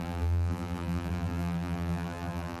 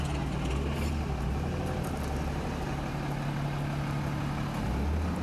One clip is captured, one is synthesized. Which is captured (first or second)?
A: second